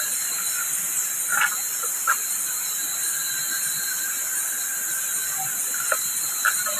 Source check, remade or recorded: recorded